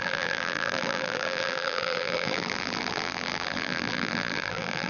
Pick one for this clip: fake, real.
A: fake